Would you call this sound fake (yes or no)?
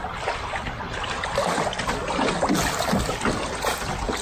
no